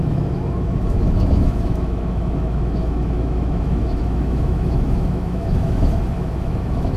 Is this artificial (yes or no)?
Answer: yes